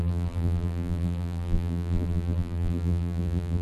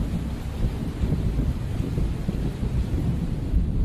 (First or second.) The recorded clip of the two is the second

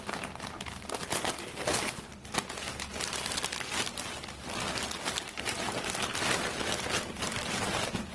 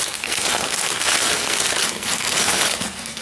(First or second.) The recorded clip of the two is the first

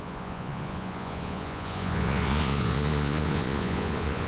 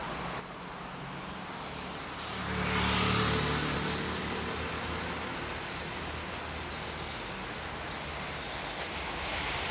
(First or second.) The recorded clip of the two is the second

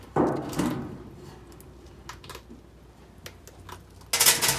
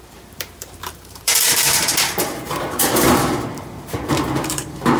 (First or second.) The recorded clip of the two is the first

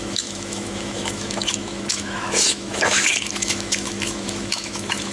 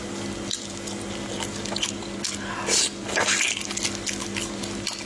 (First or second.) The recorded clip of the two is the second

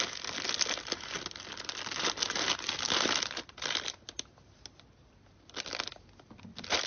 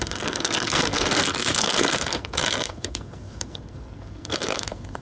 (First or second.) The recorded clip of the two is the first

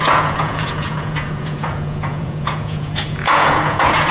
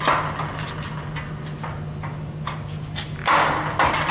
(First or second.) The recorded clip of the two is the second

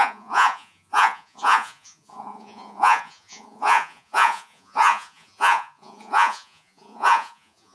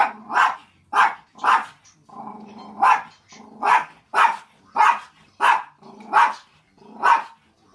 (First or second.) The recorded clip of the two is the second